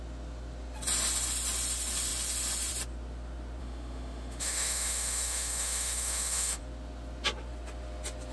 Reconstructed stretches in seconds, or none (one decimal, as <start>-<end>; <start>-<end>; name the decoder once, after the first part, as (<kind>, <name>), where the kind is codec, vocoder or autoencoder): 3.6-6.6 (autoencoder, DAC-VAE)